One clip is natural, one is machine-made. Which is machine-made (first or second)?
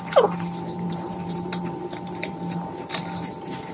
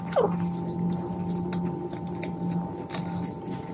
first